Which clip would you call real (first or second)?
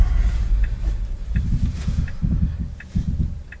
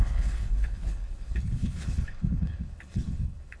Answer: first